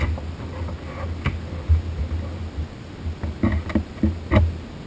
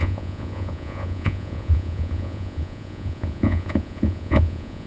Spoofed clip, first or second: second